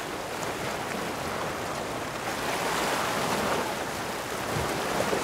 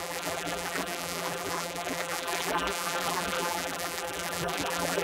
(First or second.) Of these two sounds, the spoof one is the second